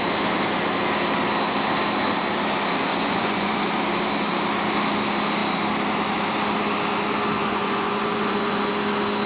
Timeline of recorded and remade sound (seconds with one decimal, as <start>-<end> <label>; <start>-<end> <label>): 0.0-2.9 recorded; 2.9-3.6 remade; 3.6-7.4 recorded; 7.4-8.7 remade; 8.7-9.3 recorded